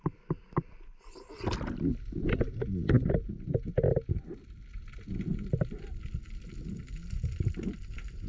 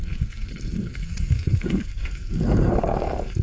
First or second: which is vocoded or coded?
second